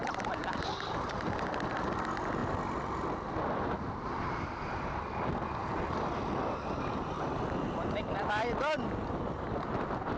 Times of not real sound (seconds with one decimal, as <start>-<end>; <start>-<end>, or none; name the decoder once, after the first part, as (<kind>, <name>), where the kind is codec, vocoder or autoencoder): none